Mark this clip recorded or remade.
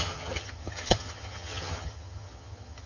remade